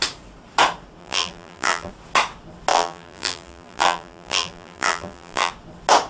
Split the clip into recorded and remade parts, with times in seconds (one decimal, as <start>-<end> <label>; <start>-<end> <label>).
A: 0.0-1.0 recorded; 1.0-1.9 remade; 1.9-2.7 recorded; 2.7-5.5 remade; 5.5-6.1 recorded